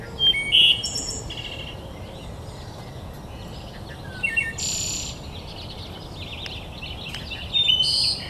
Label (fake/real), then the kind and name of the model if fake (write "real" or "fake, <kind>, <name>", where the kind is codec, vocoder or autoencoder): real